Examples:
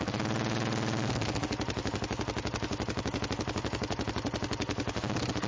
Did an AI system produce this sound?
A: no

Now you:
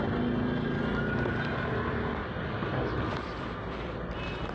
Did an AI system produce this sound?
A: no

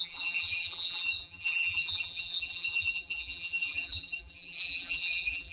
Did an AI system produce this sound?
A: yes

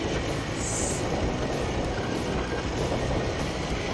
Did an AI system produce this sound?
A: no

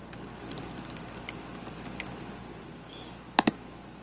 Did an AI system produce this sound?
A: no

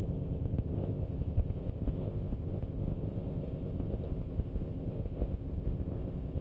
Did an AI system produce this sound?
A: yes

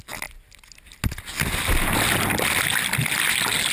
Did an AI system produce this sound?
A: no